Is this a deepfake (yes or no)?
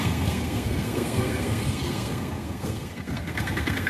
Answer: yes